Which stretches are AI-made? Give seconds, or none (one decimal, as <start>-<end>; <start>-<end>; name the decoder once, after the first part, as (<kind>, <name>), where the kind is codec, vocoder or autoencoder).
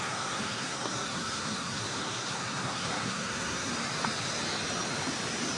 0.0-3.7 (codec, SNAC)